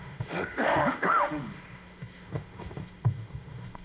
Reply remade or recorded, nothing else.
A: remade